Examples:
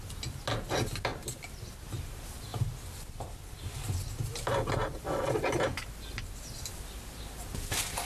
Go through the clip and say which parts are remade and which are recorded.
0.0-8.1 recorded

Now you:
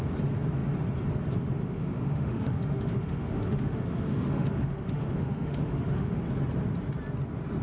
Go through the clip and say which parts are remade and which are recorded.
0.0-1.6 recorded; 1.6-6.2 remade; 6.2-7.6 recorded

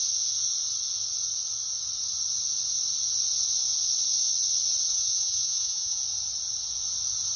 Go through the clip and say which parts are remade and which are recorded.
0.0-4.9 recorded; 4.9-6.0 remade; 6.0-7.4 recorded

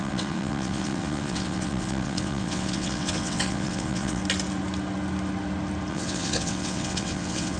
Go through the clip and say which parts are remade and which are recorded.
0.0-4.2 remade; 4.2-5.9 recorded; 5.9-7.6 remade

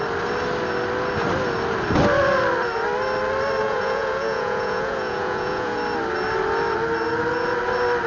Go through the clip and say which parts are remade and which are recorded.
0.0-3.6 recorded; 3.6-5.8 remade; 5.8-8.1 recorded

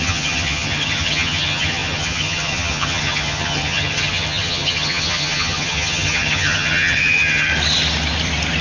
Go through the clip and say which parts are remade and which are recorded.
0.0-7.5 remade; 7.5-8.6 recorded

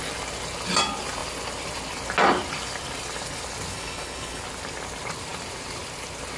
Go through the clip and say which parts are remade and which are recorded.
0.0-3.7 recorded; 3.7-4.4 remade; 4.4-6.4 recorded